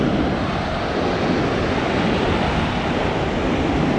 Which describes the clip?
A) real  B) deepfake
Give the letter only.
A